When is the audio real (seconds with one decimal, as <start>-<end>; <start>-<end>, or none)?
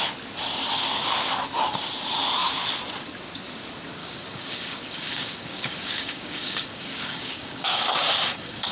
0.0-4.0